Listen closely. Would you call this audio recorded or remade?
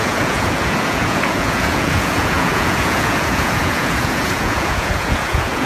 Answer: remade